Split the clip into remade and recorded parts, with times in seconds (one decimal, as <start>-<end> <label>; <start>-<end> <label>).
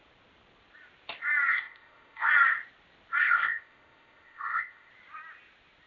0.0-1.5 recorded; 1.5-2.3 remade; 2.3-3.2 recorded; 3.2-4.9 remade; 4.9-5.9 recorded